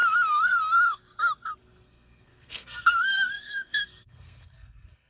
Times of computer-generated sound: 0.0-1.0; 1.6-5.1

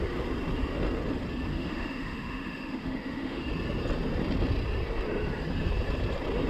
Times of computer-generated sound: 1.5-3.5

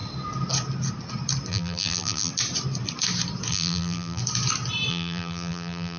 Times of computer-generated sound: 1.5-2.3; 3.5-4.2; 4.9-6.0